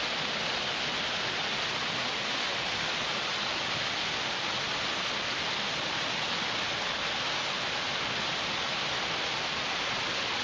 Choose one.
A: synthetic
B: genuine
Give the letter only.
B